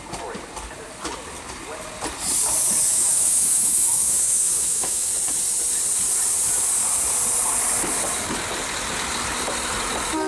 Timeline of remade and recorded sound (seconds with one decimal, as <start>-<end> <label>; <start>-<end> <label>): 0.0-2.9 recorded; 2.9-5.1 remade; 5.1-10.3 recorded